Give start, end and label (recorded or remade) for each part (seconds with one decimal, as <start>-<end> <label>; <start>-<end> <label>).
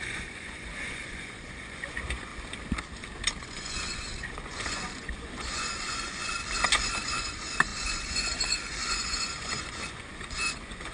0.0-2.3 remade; 2.3-3.4 recorded; 3.4-6.3 remade; 6.3-6.8 recorded; 6.8-10.9 remade